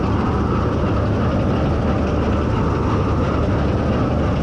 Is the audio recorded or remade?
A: recorded